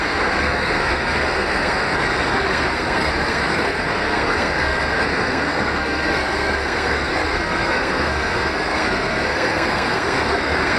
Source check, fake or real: fake